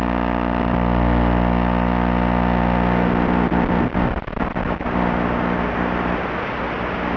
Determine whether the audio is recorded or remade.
recorded